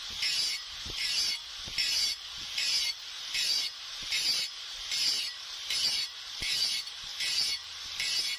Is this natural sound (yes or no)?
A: no